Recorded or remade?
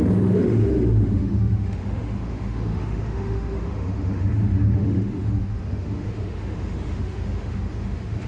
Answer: remade